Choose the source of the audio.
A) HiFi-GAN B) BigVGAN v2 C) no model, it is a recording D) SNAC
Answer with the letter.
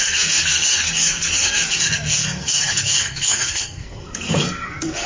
D